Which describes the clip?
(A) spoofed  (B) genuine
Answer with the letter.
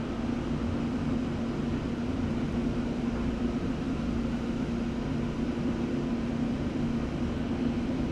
B